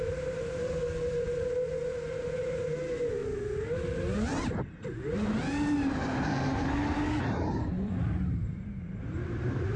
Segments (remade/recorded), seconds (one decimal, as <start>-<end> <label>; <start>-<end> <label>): 0.0-3.2 remade; 3.2-7.2 recorded; 7.2-9.8 remade